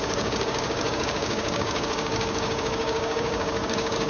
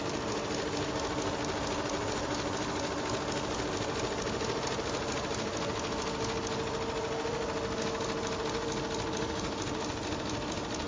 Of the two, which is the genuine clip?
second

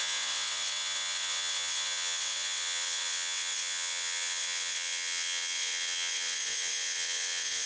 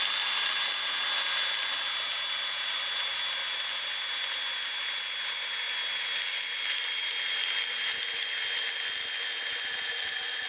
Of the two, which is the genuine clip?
second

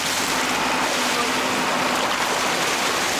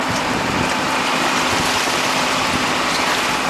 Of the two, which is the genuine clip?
first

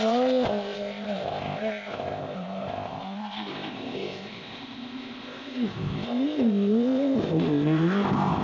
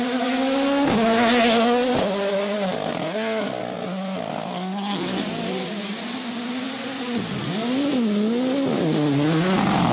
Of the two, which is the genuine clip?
second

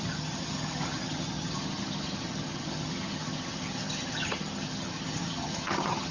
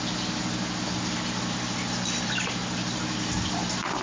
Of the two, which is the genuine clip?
second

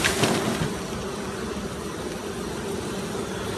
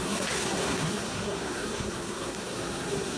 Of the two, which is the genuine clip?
first